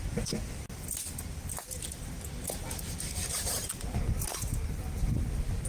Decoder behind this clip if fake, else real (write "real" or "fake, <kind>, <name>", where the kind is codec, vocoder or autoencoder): real